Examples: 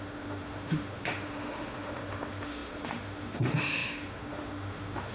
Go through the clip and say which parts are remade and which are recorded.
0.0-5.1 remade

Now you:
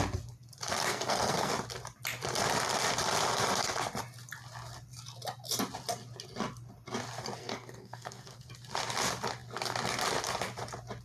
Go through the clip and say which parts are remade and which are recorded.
0.0-0.9 recorded; 0.9-1.5 remade; 1.5-7.4 recorded; 7.4-8.5 remade; 8.5-11.0 recorded

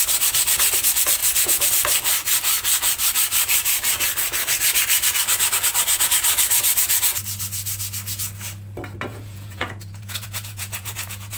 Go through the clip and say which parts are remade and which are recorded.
0.0-1.2 recorded; 1.2-1.7 remade; 1.7-9.1 recorded; 9.1-11.4 remade

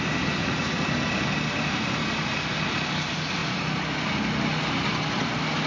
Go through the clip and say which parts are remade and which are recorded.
0.0-0.4 recorded; 0.4-0.9 remade; 0.9-5.7 recorded